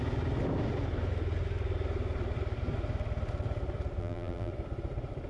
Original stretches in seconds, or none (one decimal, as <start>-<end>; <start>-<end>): 0.0-4.0; 4.5-5.3